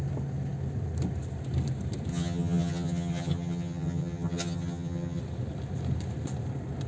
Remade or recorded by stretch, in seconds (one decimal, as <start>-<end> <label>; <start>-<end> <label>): 0.0-2.1 recorded; 2.1-5.2 remade; 5.2-6.9 recorded